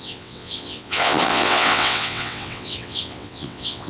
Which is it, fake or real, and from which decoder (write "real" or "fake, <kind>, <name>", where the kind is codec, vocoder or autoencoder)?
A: fake, vocoder, WaveNeXt